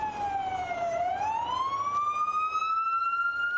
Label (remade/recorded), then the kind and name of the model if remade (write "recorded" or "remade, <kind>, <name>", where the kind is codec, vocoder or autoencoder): recorded